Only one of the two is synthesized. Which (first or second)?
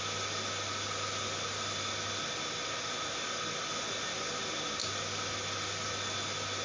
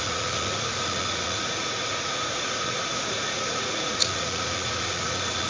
second